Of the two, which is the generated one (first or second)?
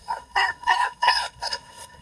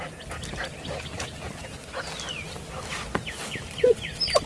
first